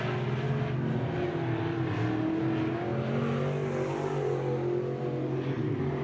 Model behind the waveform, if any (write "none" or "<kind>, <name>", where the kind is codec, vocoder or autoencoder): none